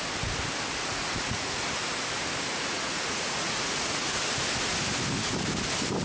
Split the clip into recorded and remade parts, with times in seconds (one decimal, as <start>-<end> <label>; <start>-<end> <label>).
0.0-0.9 recorded; 0.9-1.6 remade; 1.6-2.5 recorded; 2.5-4.2 remade; 4.2-6.0 recorded